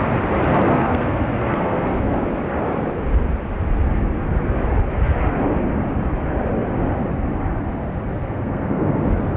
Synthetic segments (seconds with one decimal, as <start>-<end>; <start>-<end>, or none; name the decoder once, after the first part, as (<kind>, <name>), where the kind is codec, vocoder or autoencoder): 0.7-2.0 (codec, SNAC); 8.2-9.0